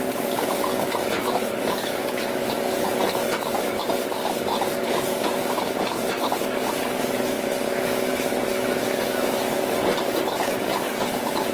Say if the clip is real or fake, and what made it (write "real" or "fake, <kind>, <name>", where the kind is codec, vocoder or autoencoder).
fake, codec, DAC